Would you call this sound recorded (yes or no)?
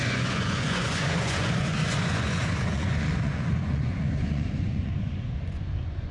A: no